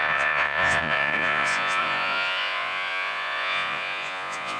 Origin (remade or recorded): remade